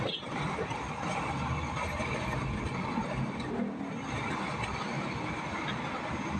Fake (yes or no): no